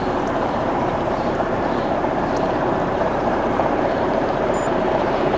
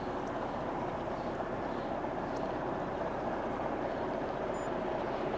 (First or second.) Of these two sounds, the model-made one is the first